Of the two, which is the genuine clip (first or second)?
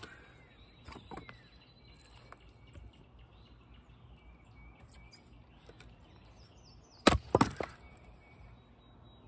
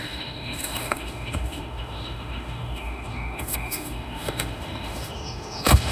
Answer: first